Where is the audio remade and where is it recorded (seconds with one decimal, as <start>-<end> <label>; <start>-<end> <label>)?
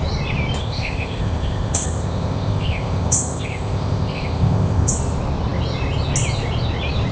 0.0-0.6 recorded; 0.6-4.9 remade; 4.9-7.1 recorded